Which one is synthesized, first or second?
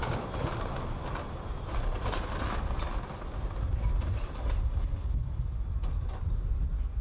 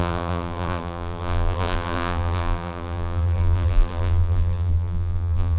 second